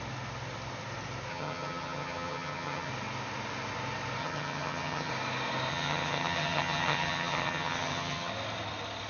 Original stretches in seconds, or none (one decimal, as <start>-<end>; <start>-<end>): 0.0-1.3; 2.9-4.2; 5.1-5.7; 8.3-9.1